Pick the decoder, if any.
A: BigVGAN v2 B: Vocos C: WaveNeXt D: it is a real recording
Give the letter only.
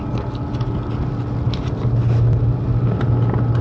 D